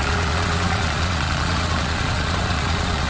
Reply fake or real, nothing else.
fake